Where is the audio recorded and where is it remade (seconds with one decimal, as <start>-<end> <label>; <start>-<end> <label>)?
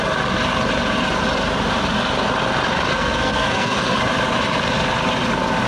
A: 0.0-2.9 recorded; 2.9-4.0 remade; 4.0-5.7 recorded